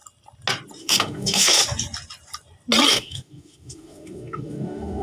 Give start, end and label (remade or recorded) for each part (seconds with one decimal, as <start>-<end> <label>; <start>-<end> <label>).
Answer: 0.0-0.8 recorded; 0.8-1.6 remade; 1.6-2.9 recorded; 2.9-5.0 remade